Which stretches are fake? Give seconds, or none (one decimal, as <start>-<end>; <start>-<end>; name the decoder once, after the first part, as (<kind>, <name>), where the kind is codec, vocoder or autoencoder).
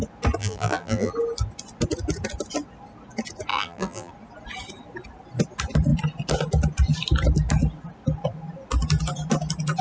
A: 0.4-1.1 (vocoder, BigVGAN v2); 3.5-4.1